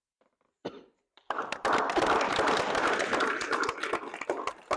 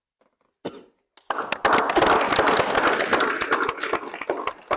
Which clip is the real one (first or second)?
second